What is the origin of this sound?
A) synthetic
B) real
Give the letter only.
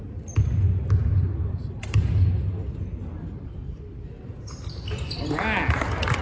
B